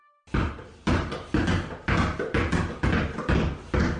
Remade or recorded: recorded